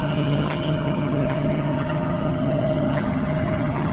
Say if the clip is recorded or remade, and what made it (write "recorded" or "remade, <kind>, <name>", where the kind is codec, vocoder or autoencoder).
remade, vocoder, HiFi-GAN